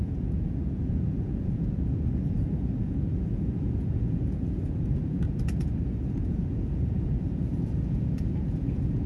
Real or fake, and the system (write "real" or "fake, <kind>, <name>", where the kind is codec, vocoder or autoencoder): fake, vocoder, Vocos